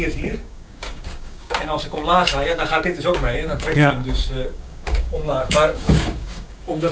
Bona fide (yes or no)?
no